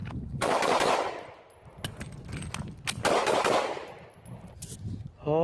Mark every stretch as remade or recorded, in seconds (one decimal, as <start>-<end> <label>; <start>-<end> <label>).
0.0-1.1 remade; 1.1-5.4 recorded